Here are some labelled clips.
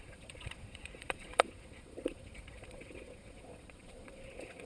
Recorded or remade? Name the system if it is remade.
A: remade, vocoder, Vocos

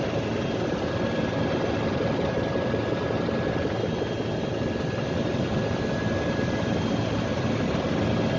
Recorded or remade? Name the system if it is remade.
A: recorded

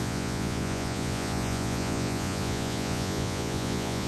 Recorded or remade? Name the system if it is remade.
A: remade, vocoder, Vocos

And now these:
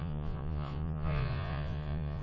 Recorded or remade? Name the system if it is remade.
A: remade, vocoder, Vocos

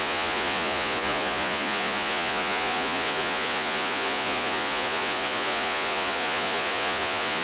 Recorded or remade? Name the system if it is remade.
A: remade, vocoder, Vocos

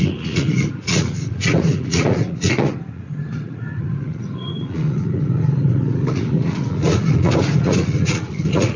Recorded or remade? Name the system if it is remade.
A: remade, vocoder, Vocos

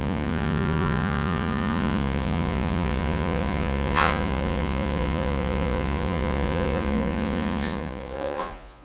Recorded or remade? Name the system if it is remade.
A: remade, vocoder, Vocos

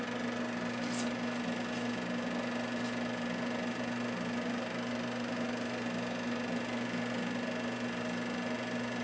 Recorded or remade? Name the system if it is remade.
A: recorded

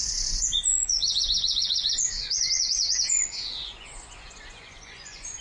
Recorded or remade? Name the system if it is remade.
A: remade, vocoder, Vocos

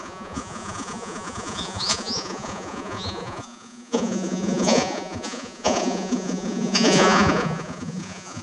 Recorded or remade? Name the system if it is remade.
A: remade, vocoder, Vocos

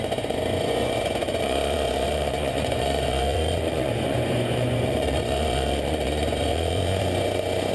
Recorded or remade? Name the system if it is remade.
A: remade, vocoder, Vocos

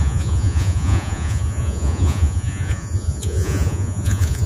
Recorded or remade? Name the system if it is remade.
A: remade, vocoder, Vocos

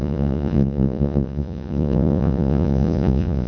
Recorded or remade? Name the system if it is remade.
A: remade, vocoder, Vocos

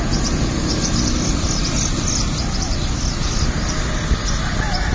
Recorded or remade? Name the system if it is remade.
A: recorded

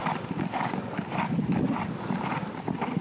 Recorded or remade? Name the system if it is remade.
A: recorded